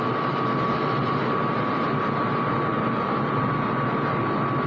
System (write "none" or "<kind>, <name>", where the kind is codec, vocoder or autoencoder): none